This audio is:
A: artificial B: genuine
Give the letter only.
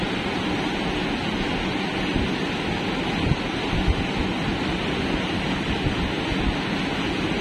B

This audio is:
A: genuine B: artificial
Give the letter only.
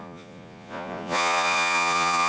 B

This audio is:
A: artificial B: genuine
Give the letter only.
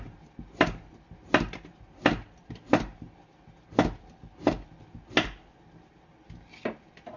B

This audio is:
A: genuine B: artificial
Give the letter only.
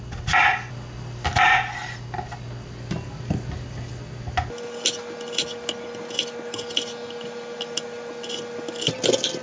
A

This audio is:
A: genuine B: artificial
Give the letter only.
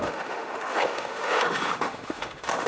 B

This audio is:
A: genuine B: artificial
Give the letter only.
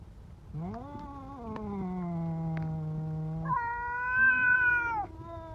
A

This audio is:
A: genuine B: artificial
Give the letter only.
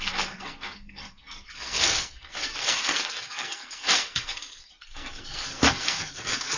B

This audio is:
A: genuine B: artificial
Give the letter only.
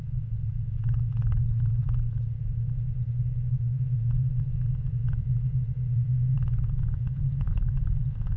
B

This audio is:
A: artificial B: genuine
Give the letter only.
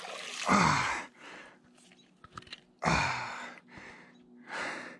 B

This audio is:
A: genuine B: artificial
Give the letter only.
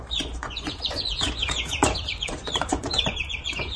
B